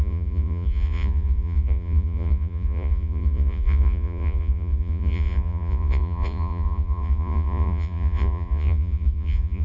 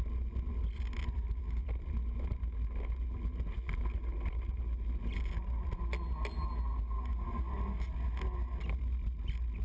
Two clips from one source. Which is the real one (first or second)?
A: second